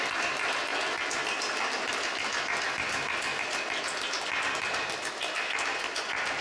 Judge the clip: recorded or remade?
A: recorded